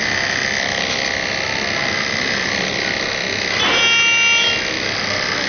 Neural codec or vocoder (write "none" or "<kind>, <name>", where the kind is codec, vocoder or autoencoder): none